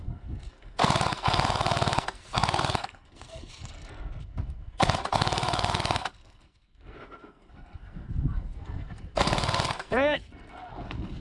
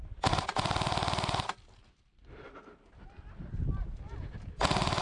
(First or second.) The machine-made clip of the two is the first